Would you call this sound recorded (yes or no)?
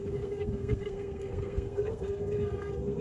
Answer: no